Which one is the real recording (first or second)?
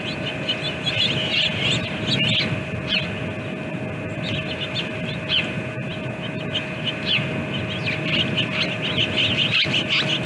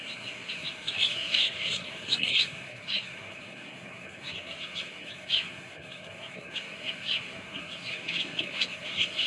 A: first